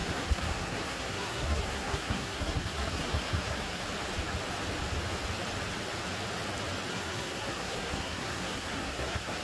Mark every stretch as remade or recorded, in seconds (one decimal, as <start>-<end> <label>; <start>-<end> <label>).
0.0-3.8 remade; 3.8-6.9 recorded; 6.9-9.4 remade